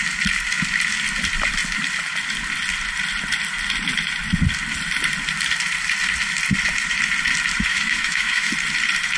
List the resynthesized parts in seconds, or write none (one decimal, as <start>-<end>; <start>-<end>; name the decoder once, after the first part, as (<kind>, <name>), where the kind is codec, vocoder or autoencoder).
7.7-8.5 (autoencoder, DAC-VAE)